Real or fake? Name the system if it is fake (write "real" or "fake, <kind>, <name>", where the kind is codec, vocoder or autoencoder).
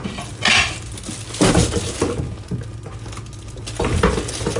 real